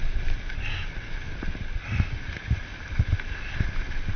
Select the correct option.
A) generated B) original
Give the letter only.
B